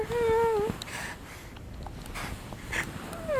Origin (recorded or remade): recorded